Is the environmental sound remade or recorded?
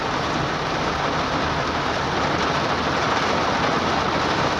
recorded